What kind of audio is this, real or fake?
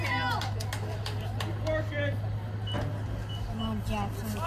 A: real